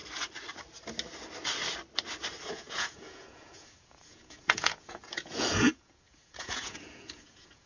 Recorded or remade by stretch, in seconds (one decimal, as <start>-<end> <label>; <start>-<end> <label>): 0.0-2.5 recorded; 2.5-7.7 remade